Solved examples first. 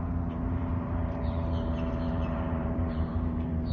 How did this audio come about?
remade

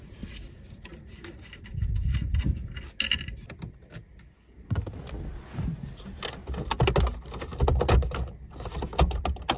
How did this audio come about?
recorded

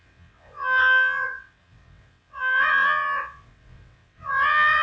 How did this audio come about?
remade